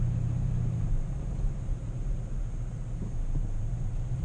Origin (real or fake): fake